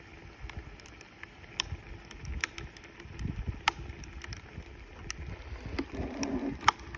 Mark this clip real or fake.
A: real